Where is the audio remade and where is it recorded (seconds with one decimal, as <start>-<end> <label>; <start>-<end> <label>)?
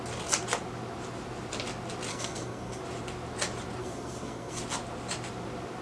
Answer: 0.0-2.1 recorded; 2.1-2.8 remade; 2.8-3.8 recorded; 3.8-4.6 remade; 4.6-5.8 recorded